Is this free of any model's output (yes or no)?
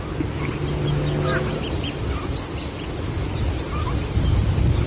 yes